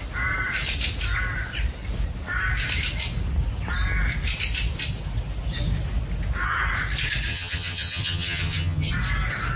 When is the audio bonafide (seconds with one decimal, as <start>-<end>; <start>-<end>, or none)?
0.0-7.3; 8.9-9.6